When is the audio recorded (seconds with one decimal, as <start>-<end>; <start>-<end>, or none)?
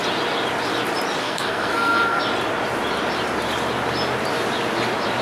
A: 0.0-1.2; 2.2-5.2